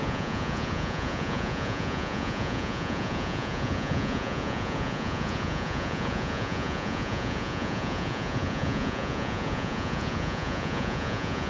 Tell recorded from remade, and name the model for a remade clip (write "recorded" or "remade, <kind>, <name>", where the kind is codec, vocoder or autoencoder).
remade, vocoder, Vocos